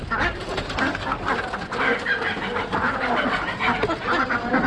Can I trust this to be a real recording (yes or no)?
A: yes